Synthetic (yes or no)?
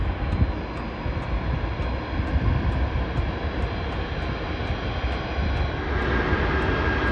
no